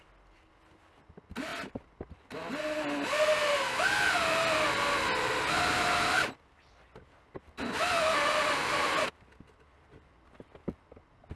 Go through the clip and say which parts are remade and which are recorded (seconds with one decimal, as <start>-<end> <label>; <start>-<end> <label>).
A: 0.0-11.4 recorded